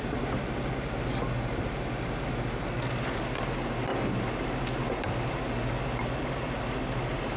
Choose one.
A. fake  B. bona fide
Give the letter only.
B